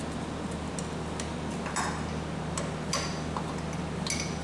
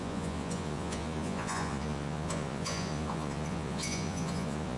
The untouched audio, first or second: first